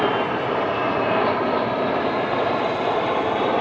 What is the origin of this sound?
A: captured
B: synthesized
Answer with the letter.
A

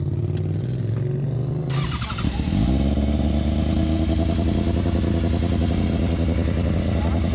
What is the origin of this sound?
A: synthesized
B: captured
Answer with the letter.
B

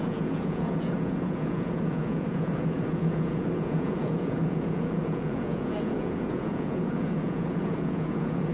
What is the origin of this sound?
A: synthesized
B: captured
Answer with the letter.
A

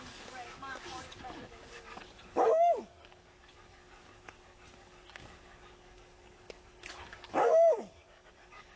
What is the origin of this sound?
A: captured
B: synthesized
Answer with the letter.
B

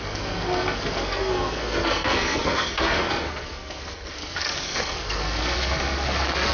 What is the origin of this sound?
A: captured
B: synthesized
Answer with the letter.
B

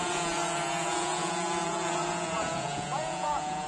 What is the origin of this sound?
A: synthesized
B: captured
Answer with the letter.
A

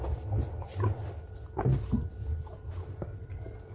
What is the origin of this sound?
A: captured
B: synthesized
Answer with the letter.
A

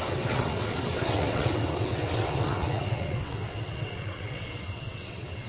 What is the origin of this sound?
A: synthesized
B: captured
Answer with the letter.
A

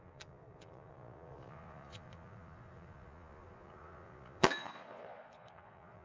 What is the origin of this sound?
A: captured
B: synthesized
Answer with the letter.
B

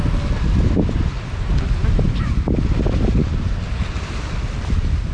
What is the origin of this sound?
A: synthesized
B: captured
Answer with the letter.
B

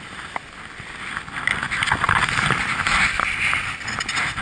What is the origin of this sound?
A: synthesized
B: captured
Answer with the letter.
B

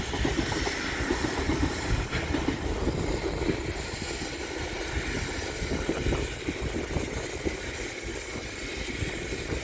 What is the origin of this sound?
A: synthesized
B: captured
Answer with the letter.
B